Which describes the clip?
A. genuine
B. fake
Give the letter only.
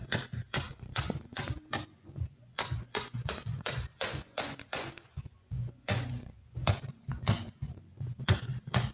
B